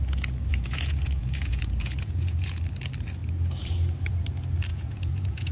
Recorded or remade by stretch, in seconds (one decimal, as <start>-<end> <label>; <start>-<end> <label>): 0.0-0.5 recorded; 0.5-2.6 remade; 2.6-4.7 recorded; 4.7-5.5 remade

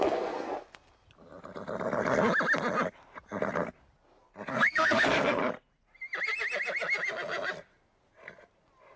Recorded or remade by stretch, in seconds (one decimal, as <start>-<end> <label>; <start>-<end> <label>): 0.0-0.5 remade; 0.5-4.5 recorded; 4.5-5.4 remade; 5.4-9.0 recorded

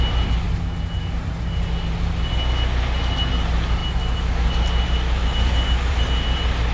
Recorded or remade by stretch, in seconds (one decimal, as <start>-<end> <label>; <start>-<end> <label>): 0.0-6.7 recorded

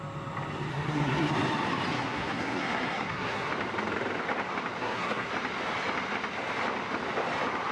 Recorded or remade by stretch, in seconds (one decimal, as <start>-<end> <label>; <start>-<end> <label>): 0.0-0.7 recorded; 0.7-1.3 remade; 1.3-1.9 recorded; 1.9-3.5 remade; 3.5-4.8 recorded; 4.8-5.3 remade; 5.3-7.7 recorded